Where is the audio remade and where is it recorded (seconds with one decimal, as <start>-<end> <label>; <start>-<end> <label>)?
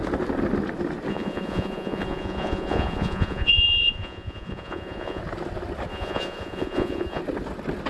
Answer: 0.0-1.1 recorded; 1.1-5.2 remade; 5.2-5.9 recorded; 5.9-7.2 remade; 7.2-7.9 recorded